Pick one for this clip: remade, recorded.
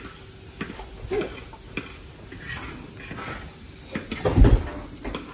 recorded